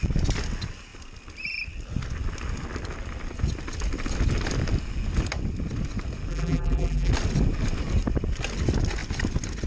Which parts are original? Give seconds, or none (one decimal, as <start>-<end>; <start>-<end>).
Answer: 0.0-6.3; 7.1-9.7

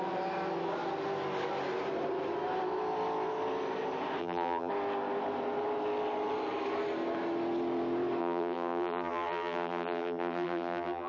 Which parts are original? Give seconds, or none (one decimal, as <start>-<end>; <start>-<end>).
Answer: 0.0-4.2; 4.7-8.2

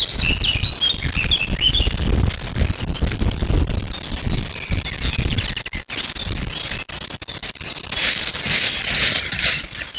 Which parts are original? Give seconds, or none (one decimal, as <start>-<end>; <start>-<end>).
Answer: 0.0-10.0